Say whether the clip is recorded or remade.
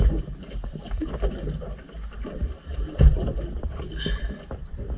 recorded